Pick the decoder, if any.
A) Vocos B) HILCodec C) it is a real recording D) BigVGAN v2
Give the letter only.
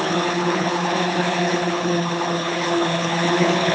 B